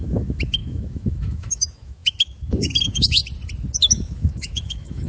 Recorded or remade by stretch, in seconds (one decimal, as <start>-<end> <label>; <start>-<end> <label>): 0.0-3.2 remade; 3.2-3.8 recorded; 3.8-5.1 remade